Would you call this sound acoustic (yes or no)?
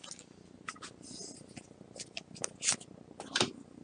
yes